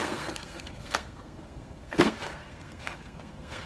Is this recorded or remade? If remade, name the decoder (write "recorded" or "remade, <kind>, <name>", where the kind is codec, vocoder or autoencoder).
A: remade, codec, SNAC